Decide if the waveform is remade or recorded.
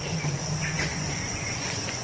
remade